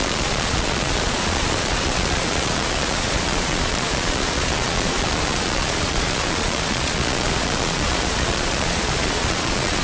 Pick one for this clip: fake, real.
fake